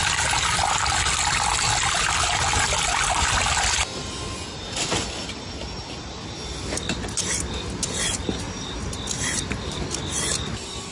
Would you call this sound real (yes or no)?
yes